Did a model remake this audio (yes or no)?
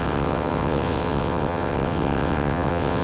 yes